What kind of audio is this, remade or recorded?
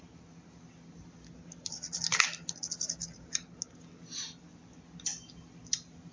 recorded